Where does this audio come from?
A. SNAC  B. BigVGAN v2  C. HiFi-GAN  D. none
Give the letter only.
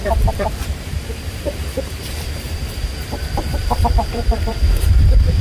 B